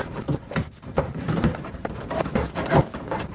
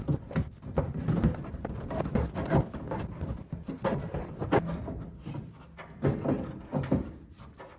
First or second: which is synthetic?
first